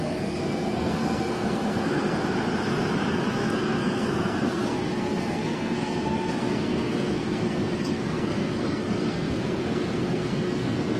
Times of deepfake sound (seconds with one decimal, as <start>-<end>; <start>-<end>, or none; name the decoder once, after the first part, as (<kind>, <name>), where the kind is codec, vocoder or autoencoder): 0.0-2.2 (codec, SNAC); 3.1-11.0